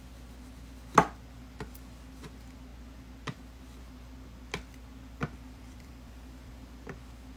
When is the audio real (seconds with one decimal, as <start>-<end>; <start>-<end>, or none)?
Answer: 0.0-5.2; 6.5-7.4